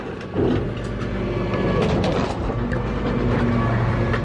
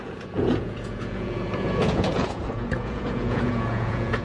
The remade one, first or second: second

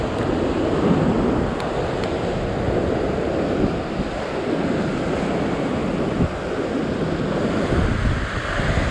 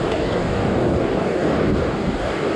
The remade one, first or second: second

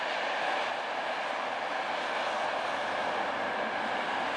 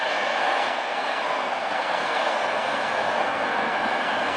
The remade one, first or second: second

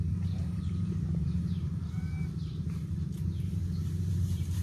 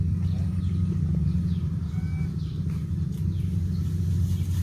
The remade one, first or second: first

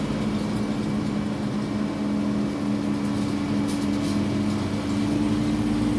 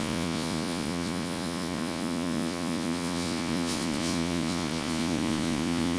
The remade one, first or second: second